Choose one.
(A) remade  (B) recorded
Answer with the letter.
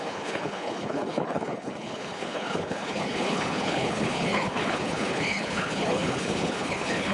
A